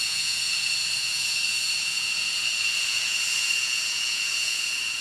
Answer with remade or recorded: remade